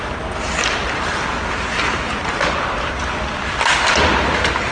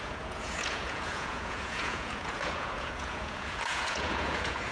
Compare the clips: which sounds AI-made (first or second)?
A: second